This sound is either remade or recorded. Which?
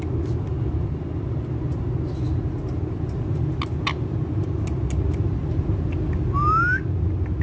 recorded